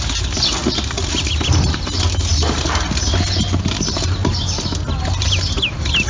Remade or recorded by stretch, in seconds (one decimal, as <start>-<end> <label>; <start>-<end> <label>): 0.0-6.1 recorded